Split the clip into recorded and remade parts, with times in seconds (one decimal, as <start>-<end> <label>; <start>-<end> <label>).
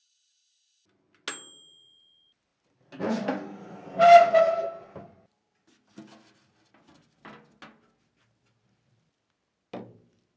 0.0-10.4 recorded